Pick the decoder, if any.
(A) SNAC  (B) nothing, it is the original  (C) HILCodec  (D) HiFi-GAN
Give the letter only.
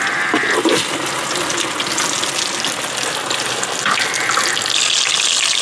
B